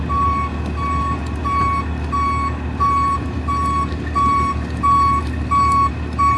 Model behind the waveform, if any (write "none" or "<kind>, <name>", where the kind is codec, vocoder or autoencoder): none